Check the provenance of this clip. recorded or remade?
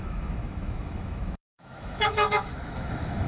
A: remade